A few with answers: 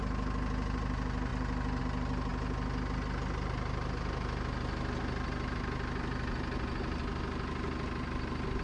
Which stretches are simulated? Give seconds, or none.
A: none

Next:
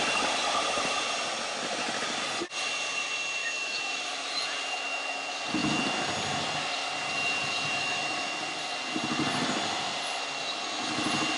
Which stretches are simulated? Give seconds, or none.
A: 3.4-4.0 (autoencoder, DAC-VAE); 7.8-8.4